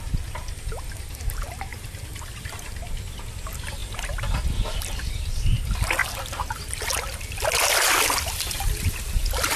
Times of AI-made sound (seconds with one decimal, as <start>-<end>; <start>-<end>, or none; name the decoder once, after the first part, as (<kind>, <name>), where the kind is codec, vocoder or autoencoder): 0.0-6.0 (vocoder, BigVGAN v2); 8.9-9.6